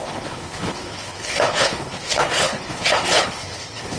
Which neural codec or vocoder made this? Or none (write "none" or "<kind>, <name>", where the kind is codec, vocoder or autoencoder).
codec, HILCodec